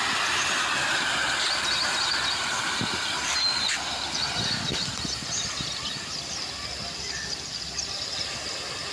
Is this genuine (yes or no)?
yes